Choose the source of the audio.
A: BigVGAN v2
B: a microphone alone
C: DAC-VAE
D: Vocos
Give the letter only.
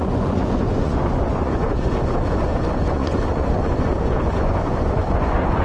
D